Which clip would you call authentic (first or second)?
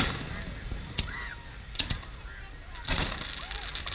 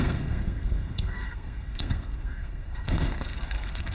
first